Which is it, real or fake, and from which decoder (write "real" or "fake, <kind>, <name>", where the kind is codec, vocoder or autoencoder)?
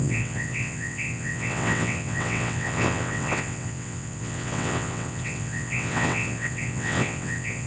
fake, vocoder, WaveNeXt